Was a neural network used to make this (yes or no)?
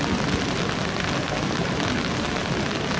no